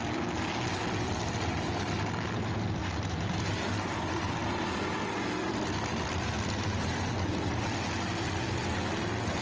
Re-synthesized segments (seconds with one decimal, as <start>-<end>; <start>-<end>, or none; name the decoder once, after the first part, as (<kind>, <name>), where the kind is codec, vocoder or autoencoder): 2.8-4.3 (vocoder, BigVGAN v2)